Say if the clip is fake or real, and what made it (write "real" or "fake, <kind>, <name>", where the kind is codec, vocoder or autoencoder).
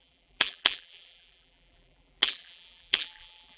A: fake, vocoder, BigVGAN v2